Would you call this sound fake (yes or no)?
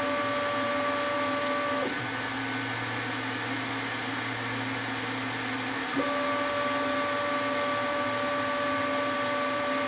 no